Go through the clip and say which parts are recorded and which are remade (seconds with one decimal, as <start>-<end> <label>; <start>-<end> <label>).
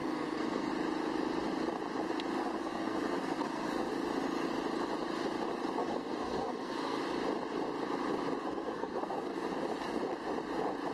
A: 0.0-0.7 remade; 0.7-2.4 recorded; 2.4-3.9 remade; 3.9-5.8 recorded; 5.8-7.0 remade; 7.0-8.4 recorded; 8.4-9.5 remade; 9.5-10.9 recorded